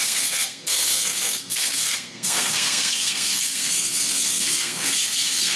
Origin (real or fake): fake